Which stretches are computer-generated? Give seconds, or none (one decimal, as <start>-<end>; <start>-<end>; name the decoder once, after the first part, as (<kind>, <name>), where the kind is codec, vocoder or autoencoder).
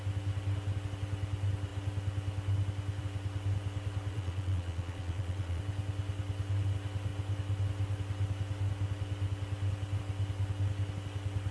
4.1-5.6 (vocoder, Vocos)